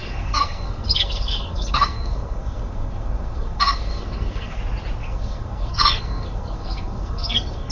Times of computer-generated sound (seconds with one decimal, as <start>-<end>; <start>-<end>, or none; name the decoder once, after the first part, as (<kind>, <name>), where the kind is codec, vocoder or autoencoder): 0.0-4.6 (codec, SNAC); 5.0-7.7